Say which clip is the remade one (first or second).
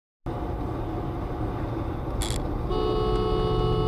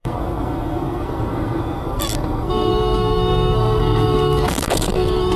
second